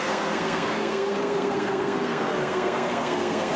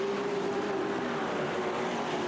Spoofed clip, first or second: first